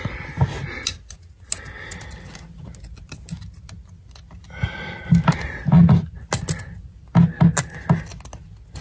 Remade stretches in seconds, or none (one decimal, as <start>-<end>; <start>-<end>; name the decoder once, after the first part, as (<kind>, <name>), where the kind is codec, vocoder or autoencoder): none